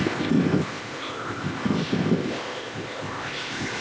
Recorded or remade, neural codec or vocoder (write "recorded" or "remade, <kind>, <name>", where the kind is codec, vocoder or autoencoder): remade, codec, ZipCodec